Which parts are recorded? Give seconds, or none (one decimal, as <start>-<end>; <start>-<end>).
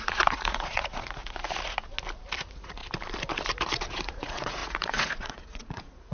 1.2-2.4; 2.8-3.9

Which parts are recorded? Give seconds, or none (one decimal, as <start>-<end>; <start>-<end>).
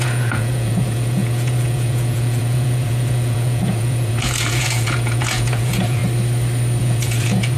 6.0-6.8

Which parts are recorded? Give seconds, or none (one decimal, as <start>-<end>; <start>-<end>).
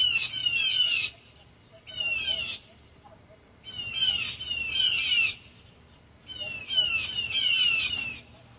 0.0-0.4; 1.2-8.6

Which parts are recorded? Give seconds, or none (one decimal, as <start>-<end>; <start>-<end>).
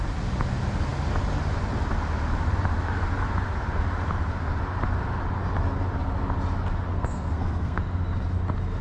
0.0-6.9; 7.8-8.8